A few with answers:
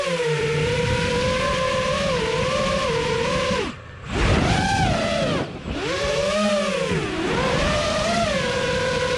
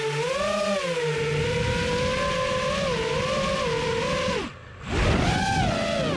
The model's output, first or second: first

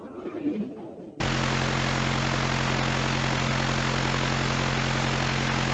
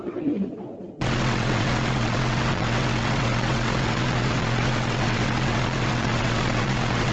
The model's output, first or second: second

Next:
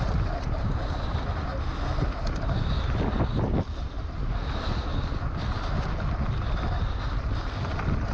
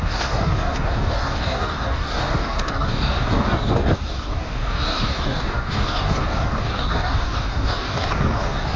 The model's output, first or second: second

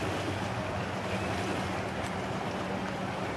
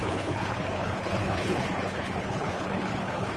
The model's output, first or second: second